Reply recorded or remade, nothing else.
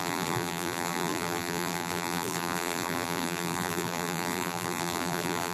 remade